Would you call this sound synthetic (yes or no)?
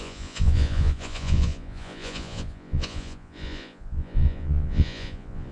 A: yes